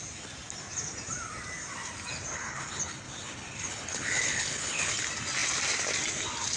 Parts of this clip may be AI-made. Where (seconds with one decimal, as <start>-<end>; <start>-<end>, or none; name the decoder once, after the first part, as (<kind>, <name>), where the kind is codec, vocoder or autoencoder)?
2.3-4.9 (codec, HILCodec)